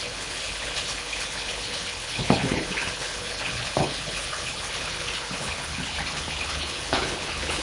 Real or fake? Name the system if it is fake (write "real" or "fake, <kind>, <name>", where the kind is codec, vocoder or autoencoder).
fake, codec, HILCodec